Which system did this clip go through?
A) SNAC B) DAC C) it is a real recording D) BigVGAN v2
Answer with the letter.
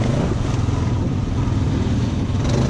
C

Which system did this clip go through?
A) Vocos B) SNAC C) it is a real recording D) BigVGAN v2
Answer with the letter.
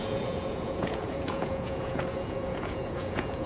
A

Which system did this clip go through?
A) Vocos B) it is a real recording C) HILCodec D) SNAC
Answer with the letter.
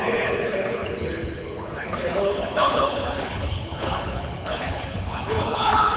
C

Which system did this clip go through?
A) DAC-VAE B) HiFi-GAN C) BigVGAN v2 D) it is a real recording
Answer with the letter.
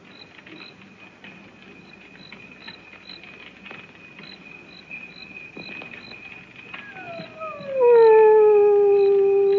D